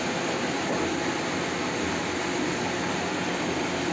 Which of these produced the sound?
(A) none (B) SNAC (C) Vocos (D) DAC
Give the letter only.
A